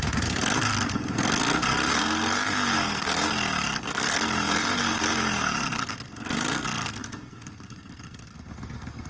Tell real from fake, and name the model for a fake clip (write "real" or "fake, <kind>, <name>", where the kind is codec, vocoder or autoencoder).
fake, codec, SNAC